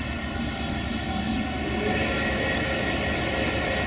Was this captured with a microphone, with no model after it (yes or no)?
yes